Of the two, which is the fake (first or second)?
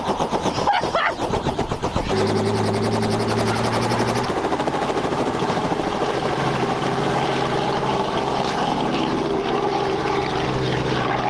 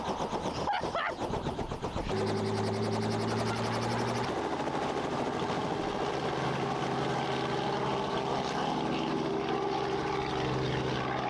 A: first